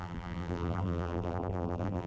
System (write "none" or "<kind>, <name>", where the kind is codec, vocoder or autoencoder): vocoder, BigVGAN v2